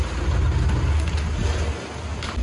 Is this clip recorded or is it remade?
recorded